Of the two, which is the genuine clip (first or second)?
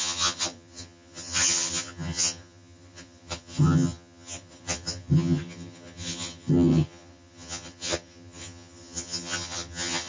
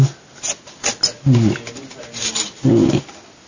second